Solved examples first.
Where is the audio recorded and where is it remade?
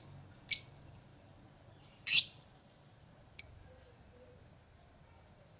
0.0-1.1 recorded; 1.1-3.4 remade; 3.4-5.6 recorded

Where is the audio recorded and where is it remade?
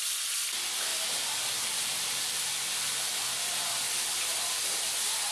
0.0-0.9 recorded; 0.9-4.1 remade; 4.1-5.3 recorded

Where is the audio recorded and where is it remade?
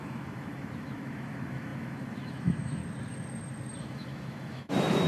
0.0-2.8 remade; 2.8-3.8 recorded; 3.8-5.1 remade